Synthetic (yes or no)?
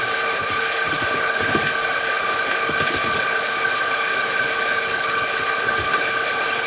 yes